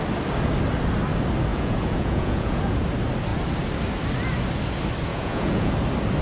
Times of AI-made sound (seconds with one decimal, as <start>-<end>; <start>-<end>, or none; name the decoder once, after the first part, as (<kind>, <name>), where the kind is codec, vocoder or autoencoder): 1.5-2.8 (vocoder, Vocos); 5.1-5.7